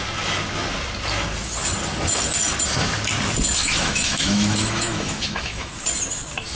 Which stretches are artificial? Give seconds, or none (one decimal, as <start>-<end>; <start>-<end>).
3.6-5.7

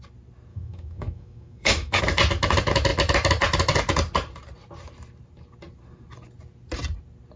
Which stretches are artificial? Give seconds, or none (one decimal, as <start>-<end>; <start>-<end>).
0.5-2.0

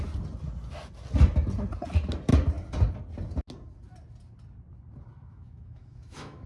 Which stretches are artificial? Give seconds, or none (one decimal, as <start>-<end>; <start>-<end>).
5.2-6.5

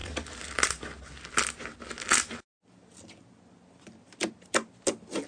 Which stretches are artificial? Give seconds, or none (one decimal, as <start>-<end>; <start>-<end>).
none

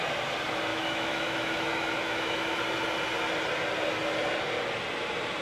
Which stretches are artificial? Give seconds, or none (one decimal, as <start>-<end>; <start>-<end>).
0.7-2.6

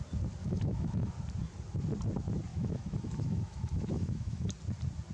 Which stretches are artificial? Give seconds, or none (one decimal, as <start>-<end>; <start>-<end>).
0.4-1.1; 2.5-4.5

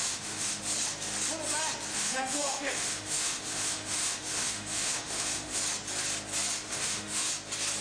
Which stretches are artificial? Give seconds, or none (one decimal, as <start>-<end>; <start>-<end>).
0.0-0.6; 1.9-5.6; 6.6-7.3